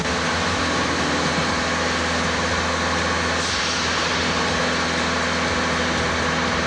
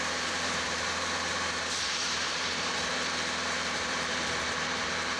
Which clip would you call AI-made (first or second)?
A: second